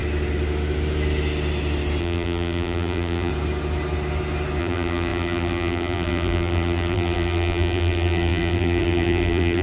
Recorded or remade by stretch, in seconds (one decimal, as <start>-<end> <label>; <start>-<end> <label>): 0.0-2.0 recorded; 2.0-3.3 remade; 3.3-4.6 recorded; 4.6-9.6 remade